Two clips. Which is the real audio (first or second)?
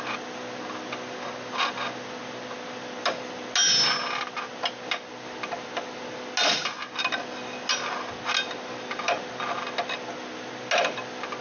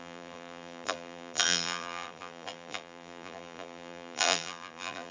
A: first